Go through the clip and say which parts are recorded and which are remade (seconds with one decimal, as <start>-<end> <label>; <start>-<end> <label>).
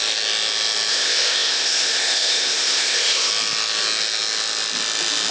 0.0-0.9 recorded; 0.9-3.3 remade; 3.3-5.3 recorded